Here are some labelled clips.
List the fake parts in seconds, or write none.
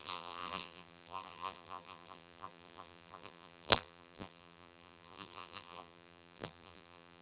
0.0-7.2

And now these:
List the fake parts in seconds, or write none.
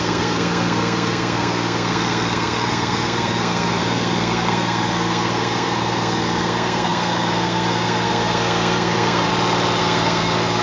0.0-9.3; 9.8-10.6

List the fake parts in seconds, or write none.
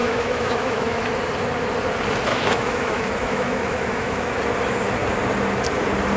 0.0-1.0; 2.3-4.4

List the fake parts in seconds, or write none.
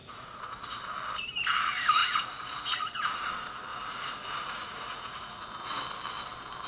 0.0-0.8; 2.0-3.3; 3.7-5.8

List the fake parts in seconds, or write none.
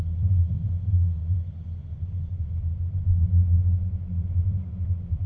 none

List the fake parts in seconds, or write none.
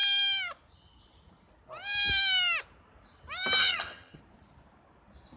3.6-4.2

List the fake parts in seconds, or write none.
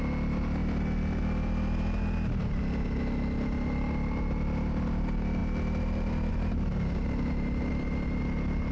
none